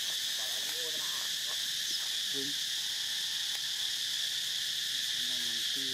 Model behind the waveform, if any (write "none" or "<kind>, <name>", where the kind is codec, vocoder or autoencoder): none